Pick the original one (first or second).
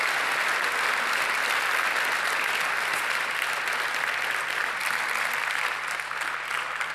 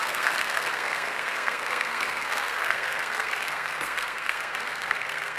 first